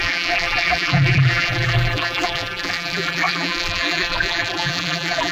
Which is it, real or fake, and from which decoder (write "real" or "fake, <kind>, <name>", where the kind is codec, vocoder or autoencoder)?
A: fake, vocoder, BigVGAN v2